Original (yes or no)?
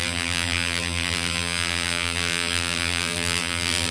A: no